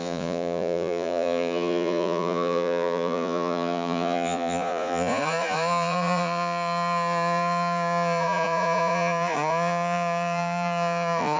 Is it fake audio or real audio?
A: fake